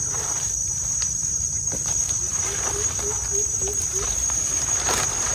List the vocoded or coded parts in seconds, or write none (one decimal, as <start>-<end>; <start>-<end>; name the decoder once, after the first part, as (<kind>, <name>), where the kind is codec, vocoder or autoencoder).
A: none